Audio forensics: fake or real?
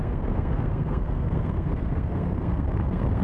fake